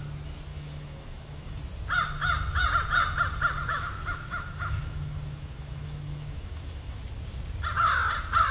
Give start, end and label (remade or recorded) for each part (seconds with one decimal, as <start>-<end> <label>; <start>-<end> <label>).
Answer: 0.0-0.5 recorded; 0.5-1.6 remade; 1.6-3.7 recorded; 3.7-7.0 remade; 7.0-8.5 recorded